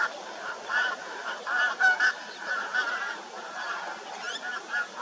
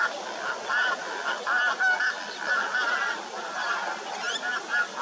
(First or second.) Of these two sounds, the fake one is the first